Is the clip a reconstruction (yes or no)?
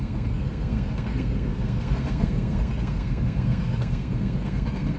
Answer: yes